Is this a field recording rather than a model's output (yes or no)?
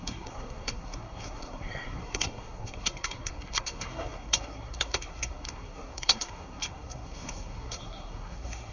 no